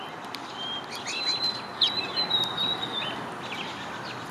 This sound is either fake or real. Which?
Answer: real